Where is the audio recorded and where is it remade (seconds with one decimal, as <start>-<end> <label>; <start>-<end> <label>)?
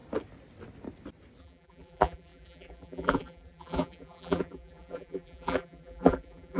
0.0-1.4 recorded; 1.4-6.6 remade